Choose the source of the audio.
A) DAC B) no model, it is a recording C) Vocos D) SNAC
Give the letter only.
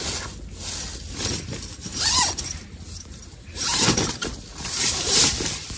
B